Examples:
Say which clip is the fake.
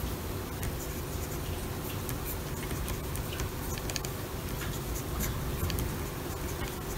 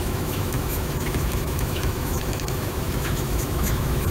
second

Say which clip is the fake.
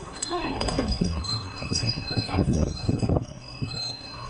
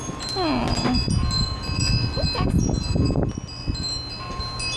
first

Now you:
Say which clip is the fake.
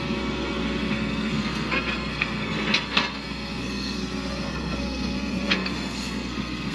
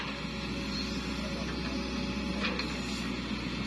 first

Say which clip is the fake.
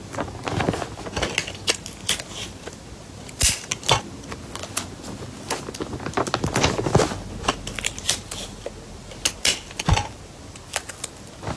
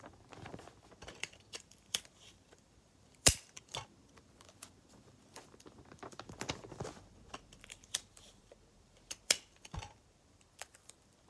second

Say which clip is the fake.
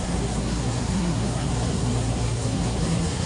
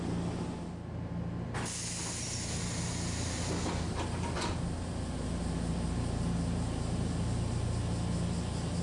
first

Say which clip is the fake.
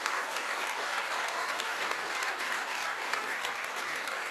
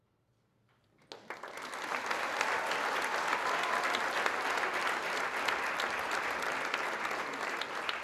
first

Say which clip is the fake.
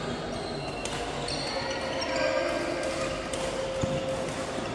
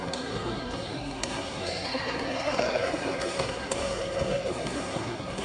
second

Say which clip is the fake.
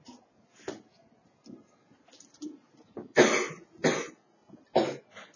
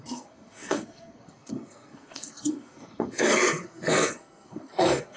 second